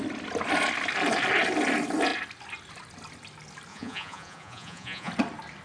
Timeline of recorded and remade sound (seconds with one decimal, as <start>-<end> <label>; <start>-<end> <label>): 0.0-3.7 recorded; 3.7-5.1 remade; 5.1-5.6 recorded